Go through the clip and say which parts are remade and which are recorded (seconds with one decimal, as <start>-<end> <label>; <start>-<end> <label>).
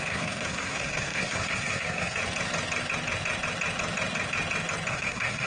0.0-2.2 remade; 2.2-4.9 recorded; 4.9-5.5 remade